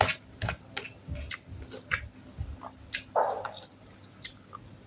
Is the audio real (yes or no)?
yes